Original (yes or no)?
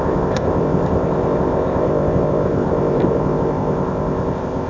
no